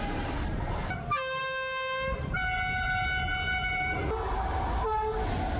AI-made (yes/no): no